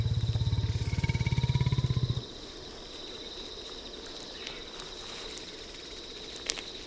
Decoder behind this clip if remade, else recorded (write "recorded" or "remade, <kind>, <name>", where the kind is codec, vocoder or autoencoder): recorded